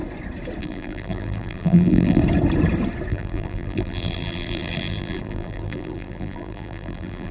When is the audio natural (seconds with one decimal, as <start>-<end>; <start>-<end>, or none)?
0.0-0.6; 2.2-3.1